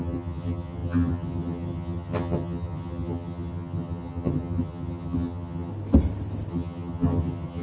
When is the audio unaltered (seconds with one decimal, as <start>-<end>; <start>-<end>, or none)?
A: 5.7-6.5